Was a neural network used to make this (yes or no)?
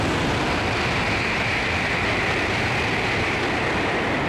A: no